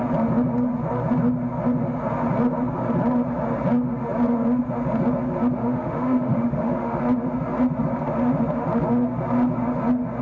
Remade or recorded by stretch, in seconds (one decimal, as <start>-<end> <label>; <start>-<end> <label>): 0.0-5.6 recorded; 5.6-7.0 remade; 7.0-10.2 recorded